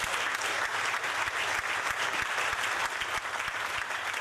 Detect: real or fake real